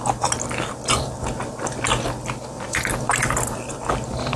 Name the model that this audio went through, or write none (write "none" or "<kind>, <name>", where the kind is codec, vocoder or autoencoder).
none